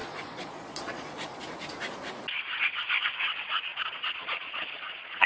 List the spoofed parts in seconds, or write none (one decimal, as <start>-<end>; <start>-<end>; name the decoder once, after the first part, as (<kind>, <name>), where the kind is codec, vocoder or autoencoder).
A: 0.0-1.4 (vocoder, Vocos); 3.7-5.3